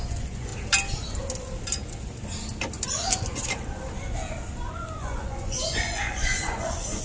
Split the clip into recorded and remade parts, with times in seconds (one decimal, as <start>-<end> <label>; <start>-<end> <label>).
0.0-0.5 remade; 0.5-4.7 recorded; 4.7-7.0 remade